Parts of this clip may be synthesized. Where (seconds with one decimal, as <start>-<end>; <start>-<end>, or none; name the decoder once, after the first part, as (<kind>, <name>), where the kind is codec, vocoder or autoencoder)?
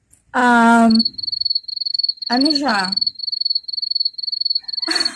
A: 1.7-2.3 (autoencoder, DAC-VAE); 2.7-3.2